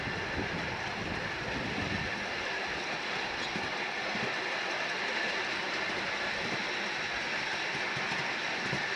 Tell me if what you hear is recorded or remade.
recorded